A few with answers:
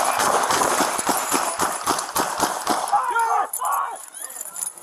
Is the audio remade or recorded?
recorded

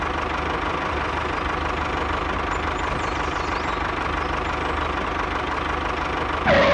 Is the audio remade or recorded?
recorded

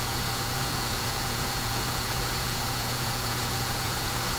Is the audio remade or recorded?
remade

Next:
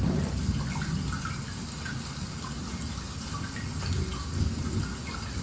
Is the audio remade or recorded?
recorded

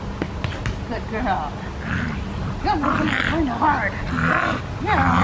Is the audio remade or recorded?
recorded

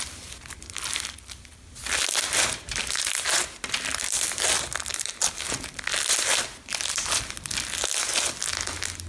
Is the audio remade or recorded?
recorded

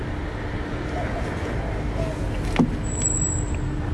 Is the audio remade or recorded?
recorded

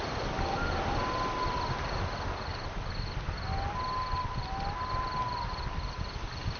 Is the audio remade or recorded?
recorded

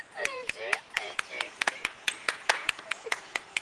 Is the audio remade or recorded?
remade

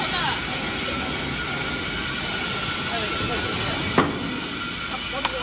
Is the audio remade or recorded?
recorded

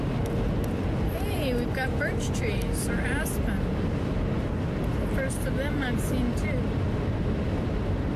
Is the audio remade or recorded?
recorded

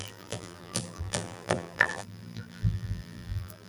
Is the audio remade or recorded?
remade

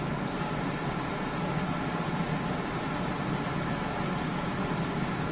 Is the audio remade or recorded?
remade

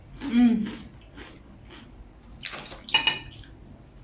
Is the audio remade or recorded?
recorded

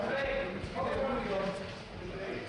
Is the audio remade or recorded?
recorded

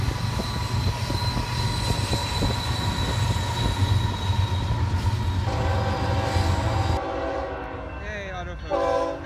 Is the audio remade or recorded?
recorded